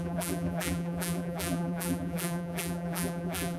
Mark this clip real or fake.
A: fake